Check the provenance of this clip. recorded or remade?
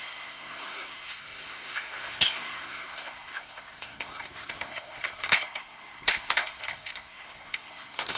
remade